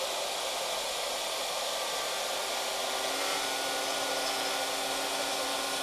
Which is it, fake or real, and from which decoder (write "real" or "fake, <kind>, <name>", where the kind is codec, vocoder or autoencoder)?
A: real